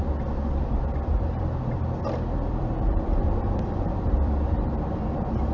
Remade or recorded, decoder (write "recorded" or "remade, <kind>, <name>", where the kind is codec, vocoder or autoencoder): remade, vocoder, BigVGAN v2